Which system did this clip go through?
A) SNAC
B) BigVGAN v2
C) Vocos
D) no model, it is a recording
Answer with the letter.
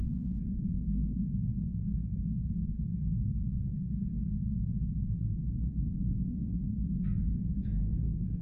A